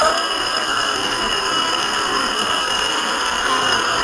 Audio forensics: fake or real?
fake